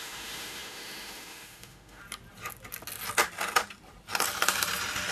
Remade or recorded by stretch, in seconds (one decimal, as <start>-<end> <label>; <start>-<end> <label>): 0.0-2.0 remade; 2.0-5.1 recorded